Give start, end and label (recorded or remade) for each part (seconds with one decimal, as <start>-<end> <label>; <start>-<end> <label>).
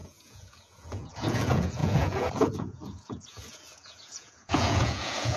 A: 0.0-5.4 remade